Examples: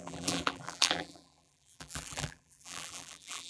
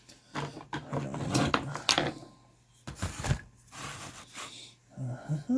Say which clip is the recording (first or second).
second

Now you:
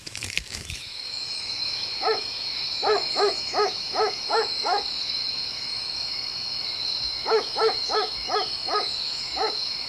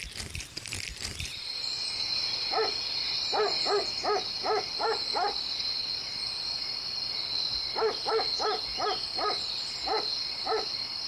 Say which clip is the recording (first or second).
second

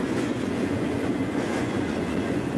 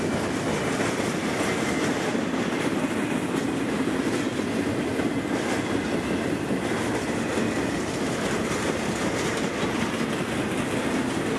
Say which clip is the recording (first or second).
second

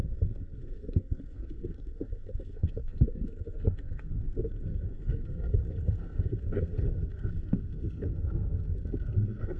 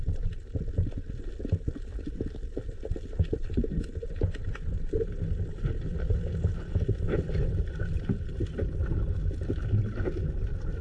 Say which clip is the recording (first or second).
second